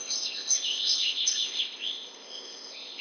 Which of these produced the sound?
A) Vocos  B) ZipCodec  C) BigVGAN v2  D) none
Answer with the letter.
B